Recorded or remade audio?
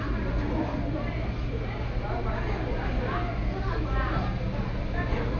recorded